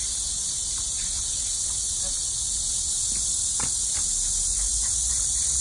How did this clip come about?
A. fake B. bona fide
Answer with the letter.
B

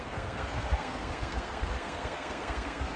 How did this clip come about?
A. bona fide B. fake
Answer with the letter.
B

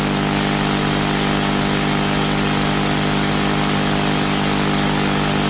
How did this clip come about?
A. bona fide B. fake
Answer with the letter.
A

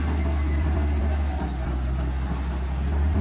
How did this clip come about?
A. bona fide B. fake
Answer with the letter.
A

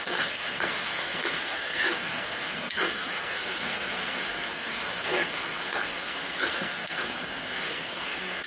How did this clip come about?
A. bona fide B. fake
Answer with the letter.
B